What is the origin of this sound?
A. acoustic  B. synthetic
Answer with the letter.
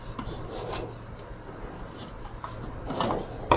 A